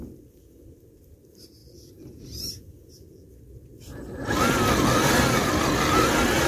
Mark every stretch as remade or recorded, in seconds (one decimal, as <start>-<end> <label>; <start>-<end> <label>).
0.0-6.5 recorded